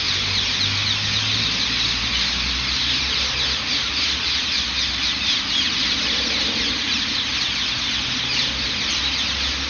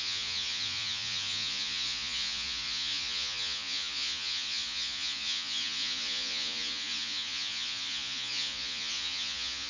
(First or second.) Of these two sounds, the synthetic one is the second